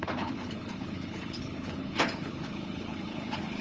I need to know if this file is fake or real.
fake